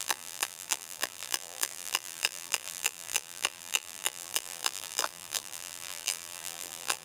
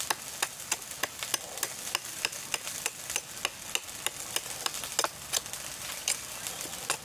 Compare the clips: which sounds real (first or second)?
second